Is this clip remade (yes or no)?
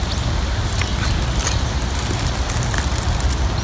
no